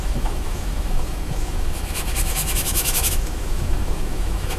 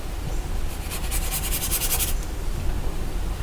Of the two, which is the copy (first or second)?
first